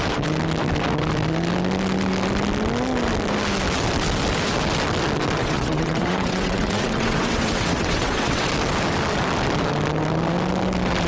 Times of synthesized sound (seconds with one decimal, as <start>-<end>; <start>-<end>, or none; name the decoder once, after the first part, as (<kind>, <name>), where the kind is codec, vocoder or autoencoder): 5.4-8.5 (vocoder, WaveNeXt)

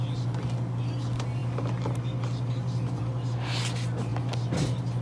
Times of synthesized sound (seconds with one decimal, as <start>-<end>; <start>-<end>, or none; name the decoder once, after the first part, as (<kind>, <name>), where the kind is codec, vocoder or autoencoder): none

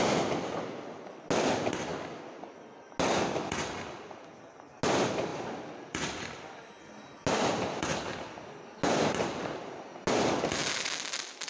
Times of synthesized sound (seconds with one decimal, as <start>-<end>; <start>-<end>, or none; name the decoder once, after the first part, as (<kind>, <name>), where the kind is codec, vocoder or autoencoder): none

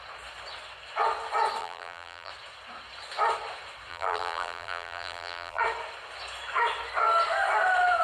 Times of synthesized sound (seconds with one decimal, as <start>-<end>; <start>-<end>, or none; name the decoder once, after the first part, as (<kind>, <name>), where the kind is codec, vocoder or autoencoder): 1.6-2.3 (vocoder, BigVGAN v2); 3.9-5.6

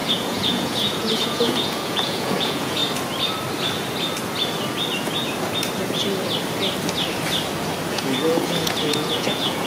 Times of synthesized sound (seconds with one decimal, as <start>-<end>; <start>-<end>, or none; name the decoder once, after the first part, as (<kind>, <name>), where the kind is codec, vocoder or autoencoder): 0.0-2.8 (vocoder, Vocos); 7.9-9.7

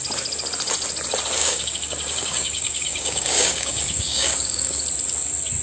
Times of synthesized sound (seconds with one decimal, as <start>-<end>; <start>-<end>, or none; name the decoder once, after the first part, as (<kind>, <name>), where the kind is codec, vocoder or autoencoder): 1.4-4.8 (codec, DAC)

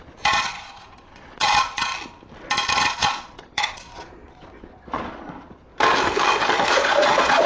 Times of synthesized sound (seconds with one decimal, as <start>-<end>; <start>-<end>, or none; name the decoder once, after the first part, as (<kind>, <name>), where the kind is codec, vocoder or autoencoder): 0.0-1.9 (vocoder, Vocos); 2.7-5.7; 6.7-7.5